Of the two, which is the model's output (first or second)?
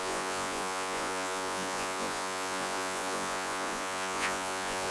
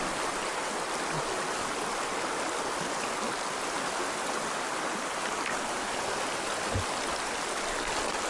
first